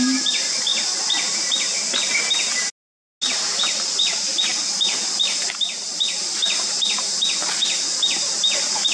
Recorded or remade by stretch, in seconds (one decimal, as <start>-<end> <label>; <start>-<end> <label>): 0.0-8.9 recorded